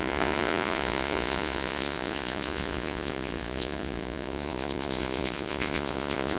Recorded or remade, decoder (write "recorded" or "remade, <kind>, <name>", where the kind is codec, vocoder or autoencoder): remade, vocoder, Vocos